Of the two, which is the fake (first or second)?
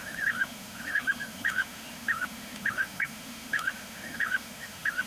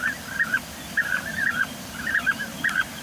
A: first